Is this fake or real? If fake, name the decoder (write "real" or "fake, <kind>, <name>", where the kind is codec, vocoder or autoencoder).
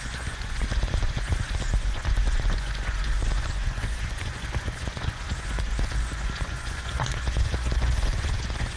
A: fake, vocoder, Vocos